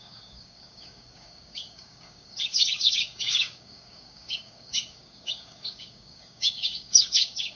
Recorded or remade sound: remade